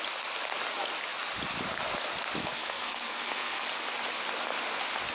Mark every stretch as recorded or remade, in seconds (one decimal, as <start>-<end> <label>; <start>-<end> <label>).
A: 0.0-2.4 recorded; 2.4-3.6 remade; 3.6-5.1 recorded